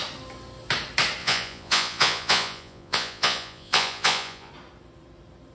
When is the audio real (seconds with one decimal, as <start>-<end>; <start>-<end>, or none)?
0.0-1.2; 4.5-5.5